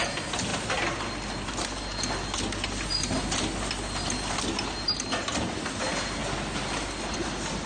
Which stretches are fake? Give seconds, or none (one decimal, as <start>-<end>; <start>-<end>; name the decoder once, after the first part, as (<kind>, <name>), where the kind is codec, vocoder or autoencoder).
none